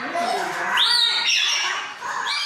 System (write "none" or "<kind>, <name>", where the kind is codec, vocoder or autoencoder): none